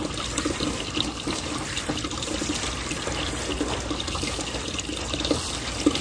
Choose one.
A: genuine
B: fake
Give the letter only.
A